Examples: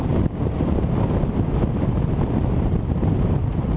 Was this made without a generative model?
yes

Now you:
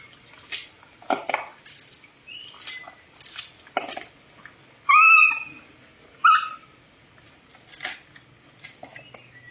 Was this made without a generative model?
yes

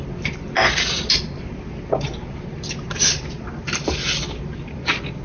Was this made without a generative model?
yes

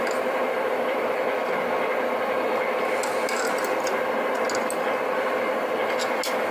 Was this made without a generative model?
yes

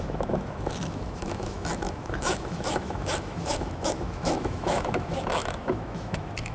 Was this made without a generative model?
no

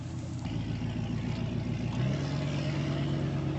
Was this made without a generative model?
yes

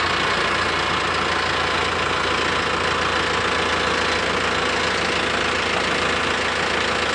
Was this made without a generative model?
yes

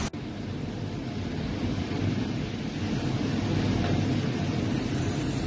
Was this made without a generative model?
yes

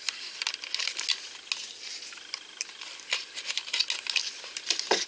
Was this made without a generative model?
yes